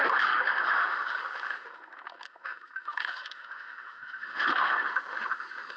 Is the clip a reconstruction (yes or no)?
yes